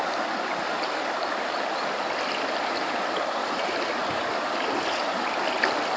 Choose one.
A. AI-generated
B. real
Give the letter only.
B